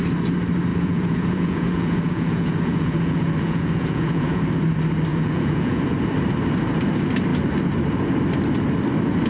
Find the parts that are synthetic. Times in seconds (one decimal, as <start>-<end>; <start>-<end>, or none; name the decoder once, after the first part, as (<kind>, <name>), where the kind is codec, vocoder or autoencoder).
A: 0.7-4.4 (vocoder, Vocos); 5.1-5.8